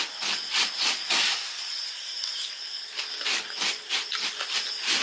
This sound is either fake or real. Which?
real